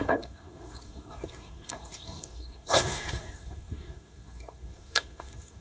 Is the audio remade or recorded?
remade